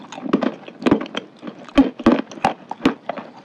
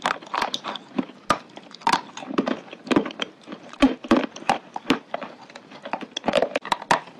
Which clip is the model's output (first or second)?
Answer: second